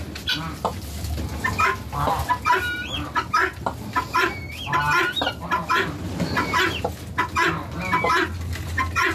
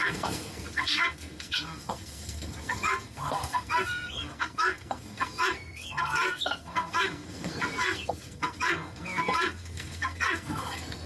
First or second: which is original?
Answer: first